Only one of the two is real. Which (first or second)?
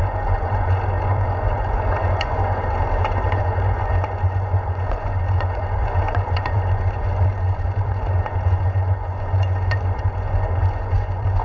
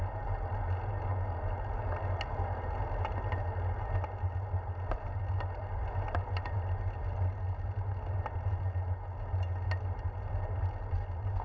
second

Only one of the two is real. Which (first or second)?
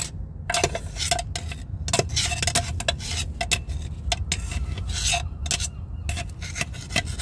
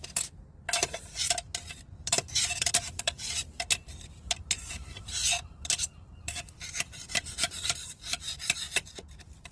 first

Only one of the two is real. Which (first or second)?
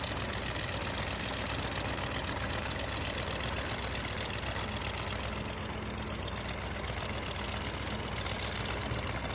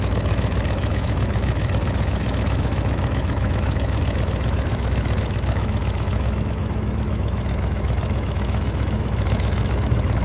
first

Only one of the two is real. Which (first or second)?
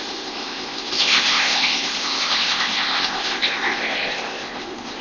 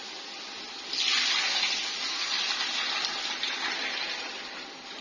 second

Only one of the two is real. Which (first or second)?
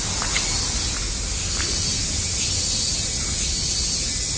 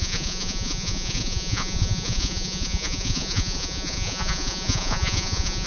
first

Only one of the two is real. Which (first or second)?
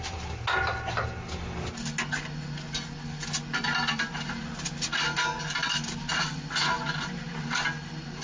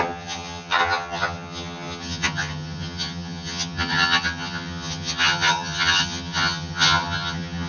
first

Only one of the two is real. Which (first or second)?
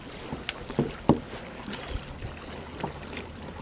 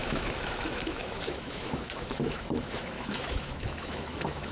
first